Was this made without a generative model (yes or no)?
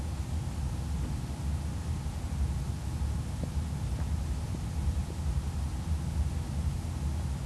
yes